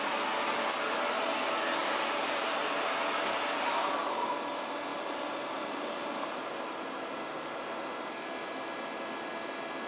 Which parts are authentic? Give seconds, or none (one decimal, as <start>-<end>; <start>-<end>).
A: 0.0-1.8; 2.6-4.9; 6.7-9.9